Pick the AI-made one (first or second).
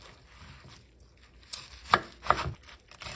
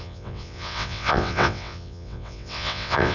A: second